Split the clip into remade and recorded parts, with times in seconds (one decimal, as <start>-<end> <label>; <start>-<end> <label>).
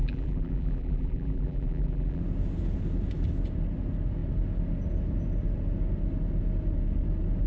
0.0-2.2 remade; 2.2-7.5 recorded